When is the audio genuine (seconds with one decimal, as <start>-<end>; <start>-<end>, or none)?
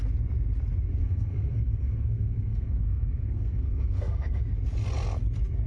0.0-1.0; 4.4-5.7